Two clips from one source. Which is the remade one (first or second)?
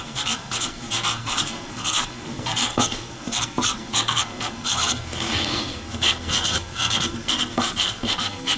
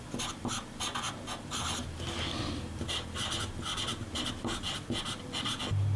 first